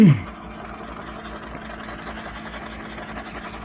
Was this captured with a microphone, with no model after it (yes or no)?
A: yes